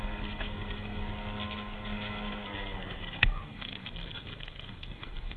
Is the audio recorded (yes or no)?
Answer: no